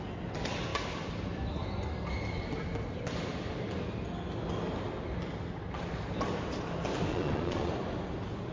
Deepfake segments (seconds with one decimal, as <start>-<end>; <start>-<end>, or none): 7.1-7.7